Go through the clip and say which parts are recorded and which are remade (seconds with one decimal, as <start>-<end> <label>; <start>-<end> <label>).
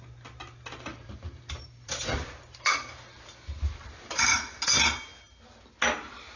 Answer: 0.0-0.9 recorded; 0.9-4.6 remade; 4.6-6.4 recorded